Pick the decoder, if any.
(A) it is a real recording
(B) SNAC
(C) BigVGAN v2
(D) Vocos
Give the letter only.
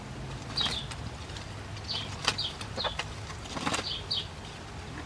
A